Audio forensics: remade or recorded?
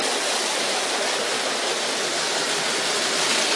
recorded